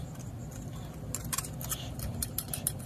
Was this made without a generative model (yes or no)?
yes